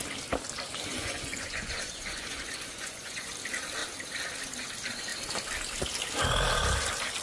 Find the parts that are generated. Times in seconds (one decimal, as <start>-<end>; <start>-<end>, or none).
0.9-3.3